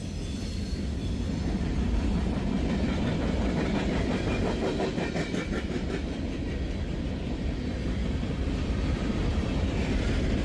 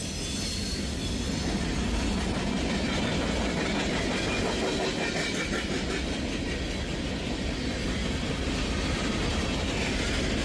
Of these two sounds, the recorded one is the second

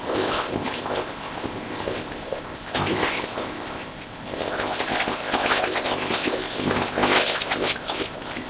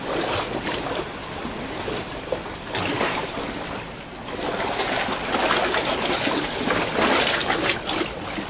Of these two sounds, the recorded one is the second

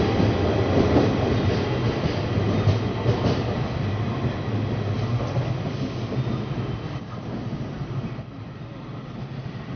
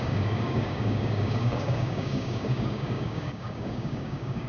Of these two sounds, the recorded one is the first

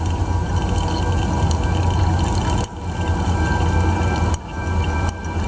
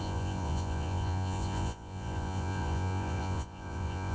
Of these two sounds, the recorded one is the first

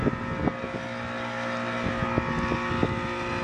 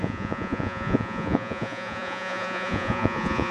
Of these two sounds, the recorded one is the first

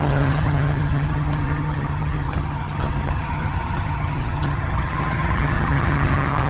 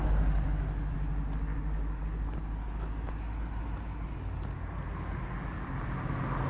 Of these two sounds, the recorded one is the second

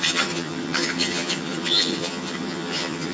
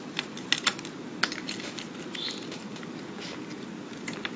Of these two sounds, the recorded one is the second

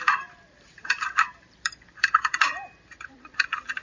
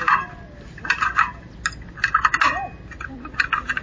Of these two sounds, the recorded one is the second